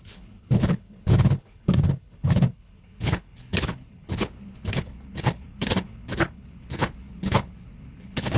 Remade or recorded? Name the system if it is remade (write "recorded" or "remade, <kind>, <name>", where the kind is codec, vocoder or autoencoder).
remade, codec, HILCodec